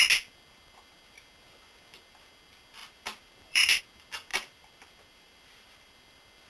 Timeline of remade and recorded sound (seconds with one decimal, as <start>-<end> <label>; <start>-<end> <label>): 0.0-2.8 recorded; 2.8-3.8 remade; 3.8-4.3 recorded; 4.3-5.9 remade; 5.9-6.5 recorded